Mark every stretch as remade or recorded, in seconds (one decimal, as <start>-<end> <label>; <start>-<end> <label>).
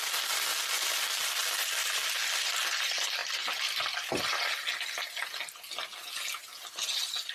0.0-7.3 recorded